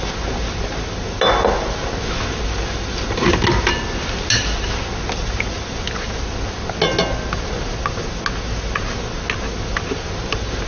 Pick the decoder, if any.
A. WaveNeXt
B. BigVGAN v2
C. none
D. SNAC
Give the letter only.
C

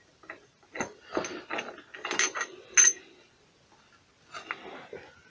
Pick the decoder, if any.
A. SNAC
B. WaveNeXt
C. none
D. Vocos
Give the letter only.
C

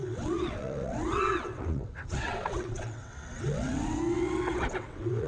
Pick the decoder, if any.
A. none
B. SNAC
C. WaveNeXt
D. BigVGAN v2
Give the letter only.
C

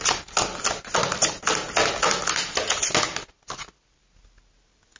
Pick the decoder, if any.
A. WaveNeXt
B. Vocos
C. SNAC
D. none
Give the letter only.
D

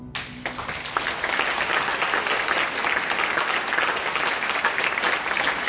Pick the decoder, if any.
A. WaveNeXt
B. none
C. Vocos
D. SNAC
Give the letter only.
B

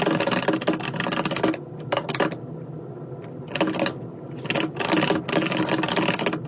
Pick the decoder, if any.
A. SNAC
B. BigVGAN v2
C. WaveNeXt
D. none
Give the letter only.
D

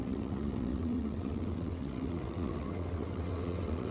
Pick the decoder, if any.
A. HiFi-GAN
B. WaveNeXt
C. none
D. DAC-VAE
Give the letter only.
B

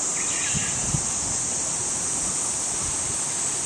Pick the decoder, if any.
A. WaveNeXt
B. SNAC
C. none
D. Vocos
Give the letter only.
C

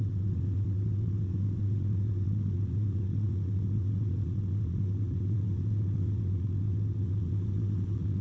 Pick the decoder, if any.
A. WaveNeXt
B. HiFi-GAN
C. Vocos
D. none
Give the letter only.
A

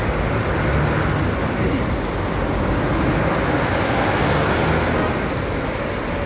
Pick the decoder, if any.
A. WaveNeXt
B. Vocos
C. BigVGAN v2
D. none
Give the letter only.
D